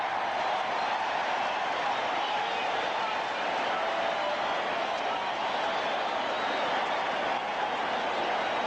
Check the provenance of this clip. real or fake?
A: real